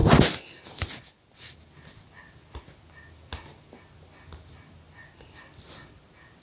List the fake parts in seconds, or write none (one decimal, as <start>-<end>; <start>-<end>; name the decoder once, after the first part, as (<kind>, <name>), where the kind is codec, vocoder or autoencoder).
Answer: none